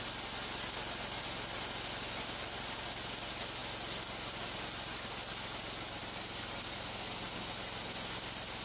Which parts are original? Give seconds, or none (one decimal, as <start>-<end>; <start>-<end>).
0.0-8.6